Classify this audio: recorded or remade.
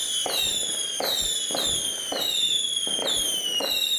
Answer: recorded